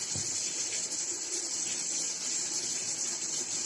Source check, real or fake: real